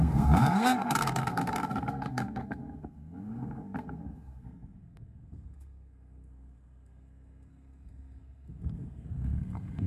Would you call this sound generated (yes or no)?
yes